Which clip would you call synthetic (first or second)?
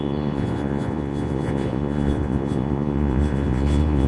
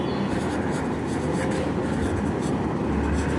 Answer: first